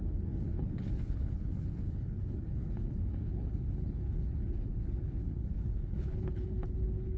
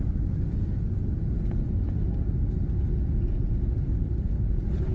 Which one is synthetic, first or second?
first